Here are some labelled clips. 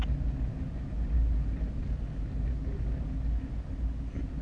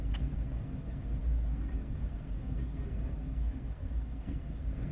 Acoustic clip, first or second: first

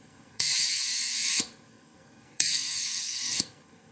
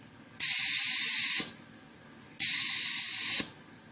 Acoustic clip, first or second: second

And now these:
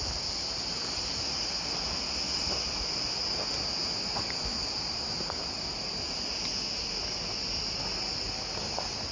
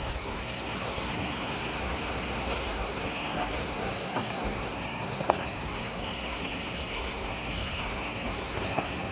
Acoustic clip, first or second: first